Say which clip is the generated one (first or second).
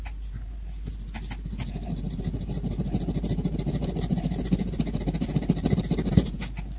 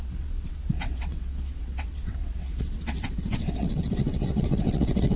second